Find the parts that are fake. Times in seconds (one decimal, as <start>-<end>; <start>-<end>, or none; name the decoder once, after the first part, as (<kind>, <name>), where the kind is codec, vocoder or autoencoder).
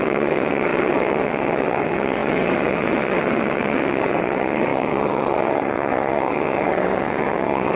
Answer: 0.0-7.8 (vocoder, WaveNeXt)